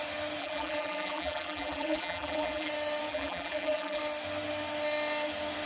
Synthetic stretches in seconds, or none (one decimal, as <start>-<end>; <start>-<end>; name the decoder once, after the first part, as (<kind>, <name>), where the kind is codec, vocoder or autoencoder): 0.4-2.7 (vocoder, BigVGAN v2); 3.1-4.0